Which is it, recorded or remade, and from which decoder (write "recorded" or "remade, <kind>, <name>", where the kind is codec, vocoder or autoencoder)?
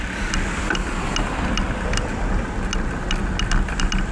recorded